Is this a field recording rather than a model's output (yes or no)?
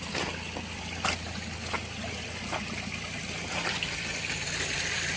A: yes